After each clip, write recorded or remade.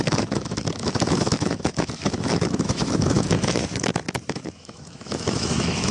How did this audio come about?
remade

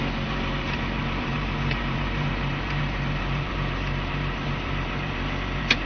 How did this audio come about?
remade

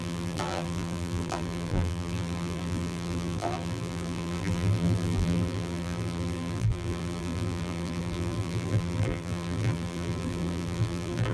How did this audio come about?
remade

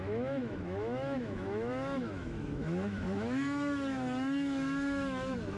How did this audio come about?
remade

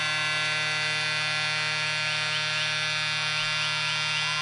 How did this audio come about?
recorded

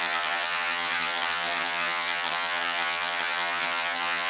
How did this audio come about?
remade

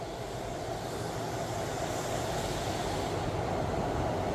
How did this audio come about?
recorded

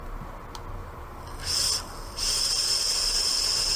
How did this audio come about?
recorded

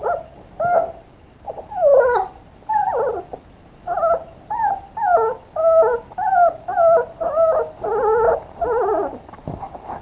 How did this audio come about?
recorded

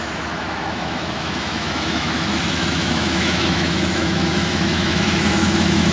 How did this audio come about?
remade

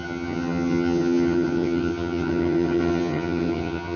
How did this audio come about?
remade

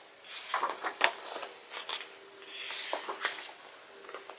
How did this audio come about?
recorded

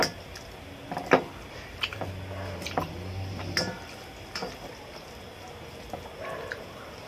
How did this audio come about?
recorded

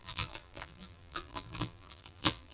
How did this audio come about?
remade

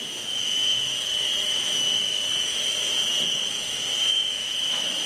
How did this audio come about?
remade